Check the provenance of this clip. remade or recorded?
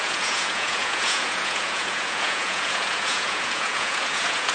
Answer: remade